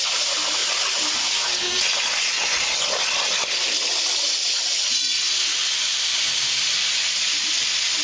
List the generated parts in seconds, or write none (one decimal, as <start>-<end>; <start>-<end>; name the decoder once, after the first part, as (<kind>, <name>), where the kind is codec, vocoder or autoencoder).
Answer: none